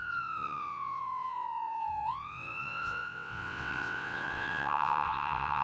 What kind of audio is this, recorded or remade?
remade